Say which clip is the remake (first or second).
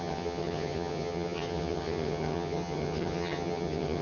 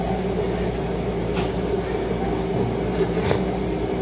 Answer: first